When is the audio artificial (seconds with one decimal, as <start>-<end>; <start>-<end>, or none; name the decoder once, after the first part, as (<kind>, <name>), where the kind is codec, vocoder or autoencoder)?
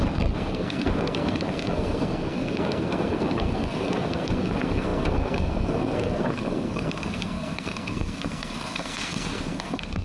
0.0-10.0 (codec, SNAC)